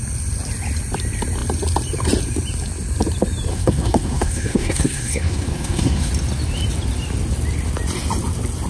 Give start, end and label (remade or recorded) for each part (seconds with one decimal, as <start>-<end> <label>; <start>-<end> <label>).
0.0-3.5 recorded; 3.5-6.1 remade; 6.1-8.7 recorded